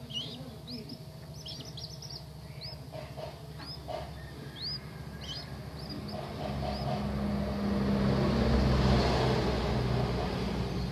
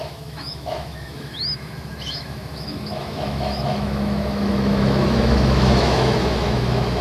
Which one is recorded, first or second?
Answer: first